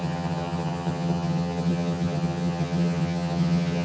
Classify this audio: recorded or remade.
remade